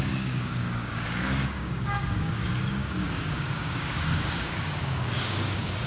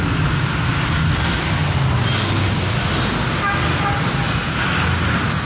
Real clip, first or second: second